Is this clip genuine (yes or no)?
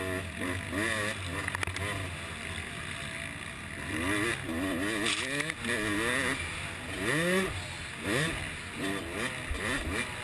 yes